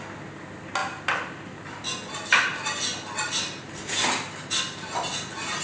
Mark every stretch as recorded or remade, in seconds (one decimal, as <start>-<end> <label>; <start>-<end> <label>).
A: 0.0-5.6 recorded